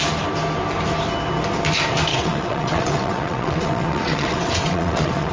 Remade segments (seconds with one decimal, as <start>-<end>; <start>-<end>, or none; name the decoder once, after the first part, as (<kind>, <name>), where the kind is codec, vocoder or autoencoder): 2.1-5.3 (vocoder, WaveNeXt)